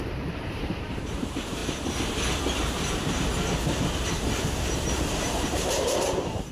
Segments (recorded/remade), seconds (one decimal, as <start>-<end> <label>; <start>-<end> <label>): 0.0-1.6 remade; 1.6-5.1 recorded; 5.1-6.5 remade